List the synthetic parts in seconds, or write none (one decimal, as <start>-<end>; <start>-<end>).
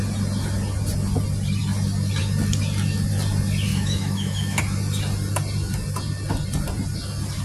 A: 3.7-4.6